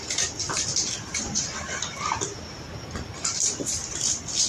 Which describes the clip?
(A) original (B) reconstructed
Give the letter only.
A